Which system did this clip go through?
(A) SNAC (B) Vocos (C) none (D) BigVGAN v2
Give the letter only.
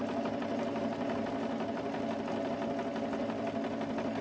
C